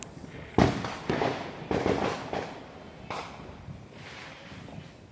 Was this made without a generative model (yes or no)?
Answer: yes